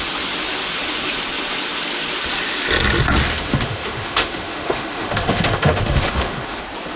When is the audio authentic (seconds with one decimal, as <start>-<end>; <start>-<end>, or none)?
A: 0.0-3.3; 6.6-7.0